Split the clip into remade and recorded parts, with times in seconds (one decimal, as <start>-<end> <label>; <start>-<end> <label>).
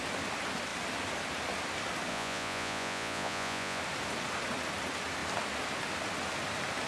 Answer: 0.0-2.1 recorded; 2.1-3.8 remade; 3.8-6.9 recorded